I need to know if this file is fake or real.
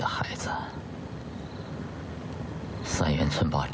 real